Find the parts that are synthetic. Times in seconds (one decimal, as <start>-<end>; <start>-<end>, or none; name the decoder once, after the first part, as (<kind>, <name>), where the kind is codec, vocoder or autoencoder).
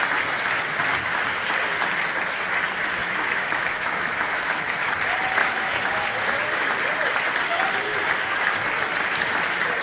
3.0-4.9 (autoencoder, DAC-VAE); 5.4-6.7